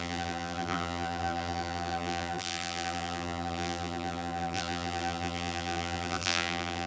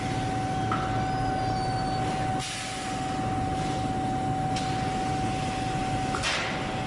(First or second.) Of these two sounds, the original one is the second